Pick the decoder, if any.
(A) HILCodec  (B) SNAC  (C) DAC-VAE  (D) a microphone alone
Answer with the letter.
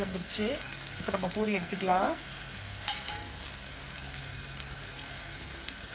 B